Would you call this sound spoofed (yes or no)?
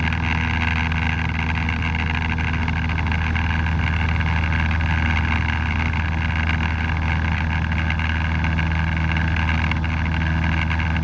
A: no